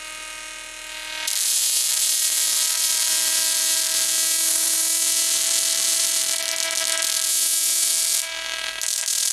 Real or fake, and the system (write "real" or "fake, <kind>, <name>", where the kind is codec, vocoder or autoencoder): real